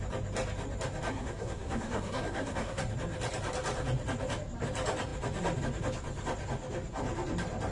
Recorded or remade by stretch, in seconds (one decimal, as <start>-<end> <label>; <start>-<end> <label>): 0.0-1.1 recorded; 1.1-2.8 remade; 2.8-7.7 recorded